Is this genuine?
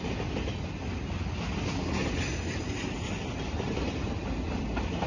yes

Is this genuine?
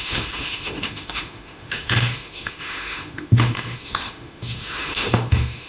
no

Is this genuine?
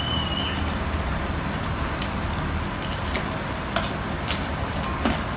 yes